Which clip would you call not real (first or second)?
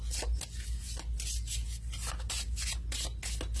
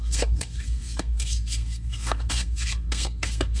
second